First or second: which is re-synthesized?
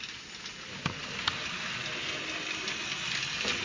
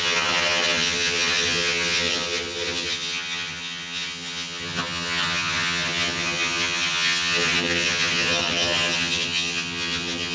second